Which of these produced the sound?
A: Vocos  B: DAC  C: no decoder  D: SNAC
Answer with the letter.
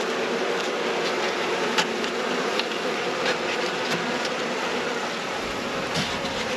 C